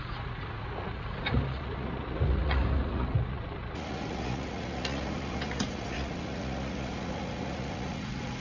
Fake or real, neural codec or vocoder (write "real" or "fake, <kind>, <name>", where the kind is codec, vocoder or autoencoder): fake, vocoder, Vocos